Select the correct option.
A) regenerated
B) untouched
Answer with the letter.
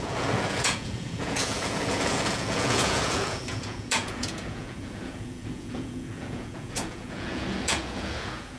A